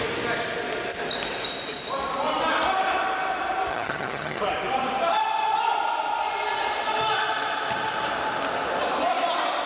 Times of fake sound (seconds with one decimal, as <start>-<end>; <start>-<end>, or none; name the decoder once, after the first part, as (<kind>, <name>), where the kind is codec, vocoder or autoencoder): 3.7-4.4 (vocoder, HiFi-GAN)